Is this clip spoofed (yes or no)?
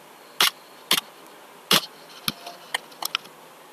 no